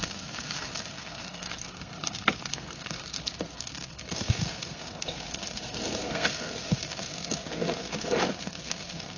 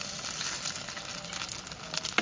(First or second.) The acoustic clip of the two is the second